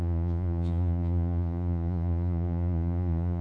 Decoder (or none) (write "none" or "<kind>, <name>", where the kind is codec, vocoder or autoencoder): vocoder, Vocos